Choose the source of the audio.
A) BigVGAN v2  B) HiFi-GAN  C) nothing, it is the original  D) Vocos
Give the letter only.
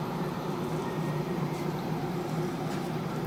A